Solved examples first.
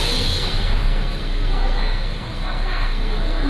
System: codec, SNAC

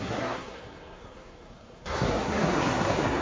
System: codec, SNAC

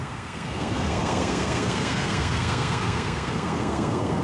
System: codec, SNAC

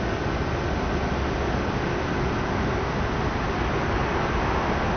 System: none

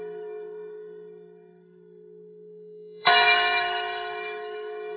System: codec, SNAC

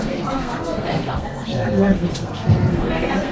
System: codec, SNAC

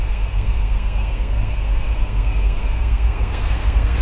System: codec, SNAC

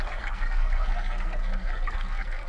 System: codec, SNAC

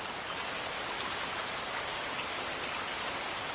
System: none